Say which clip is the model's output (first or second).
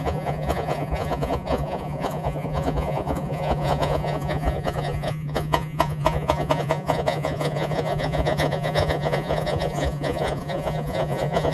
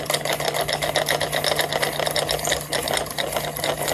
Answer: first